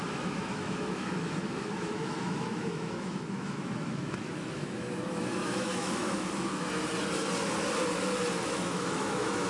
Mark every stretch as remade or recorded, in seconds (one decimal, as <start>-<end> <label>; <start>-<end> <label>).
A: 0.0-6.8 remade; 6.8-8.4 recorded; 8.4-9.5 remade